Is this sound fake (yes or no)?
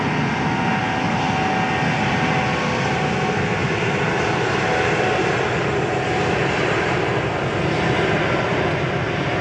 no